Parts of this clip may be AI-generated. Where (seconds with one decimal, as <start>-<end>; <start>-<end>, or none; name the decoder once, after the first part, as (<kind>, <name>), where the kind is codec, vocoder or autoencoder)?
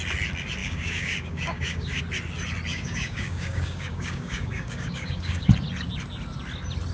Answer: 0.6-2.0 (codec, DAC); 2.7-5.5